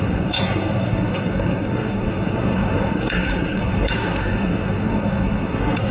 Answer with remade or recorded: remade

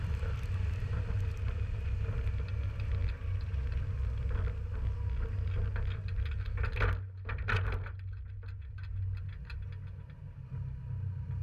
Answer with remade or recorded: recorded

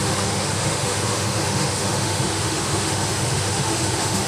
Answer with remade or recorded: remade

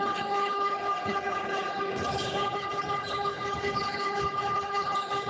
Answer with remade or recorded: remade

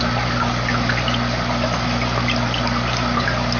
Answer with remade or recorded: recorded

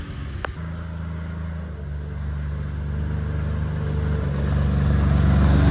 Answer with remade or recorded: recorded